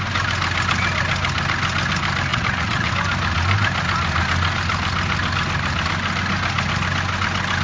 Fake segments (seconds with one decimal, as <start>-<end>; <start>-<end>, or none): 2.3-2.9